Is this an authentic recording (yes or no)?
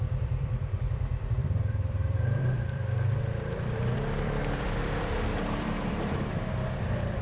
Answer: no